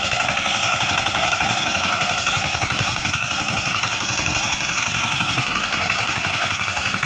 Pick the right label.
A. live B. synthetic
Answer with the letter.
B